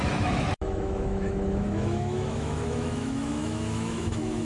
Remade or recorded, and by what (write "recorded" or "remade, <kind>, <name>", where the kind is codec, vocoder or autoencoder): remade, autoencoder, DAC-VAE